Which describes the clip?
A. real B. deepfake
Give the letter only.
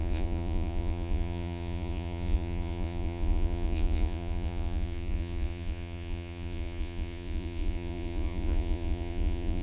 B